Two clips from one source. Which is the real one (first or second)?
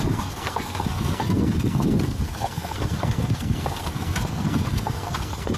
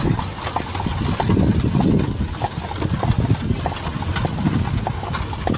second